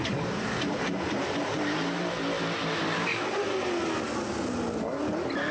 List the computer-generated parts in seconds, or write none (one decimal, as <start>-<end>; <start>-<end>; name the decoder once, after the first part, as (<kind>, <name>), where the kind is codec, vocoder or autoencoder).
0.0-2.0 (vocoder, BigVGAN v2); 3.1-3.7